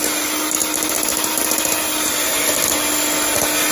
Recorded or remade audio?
recorded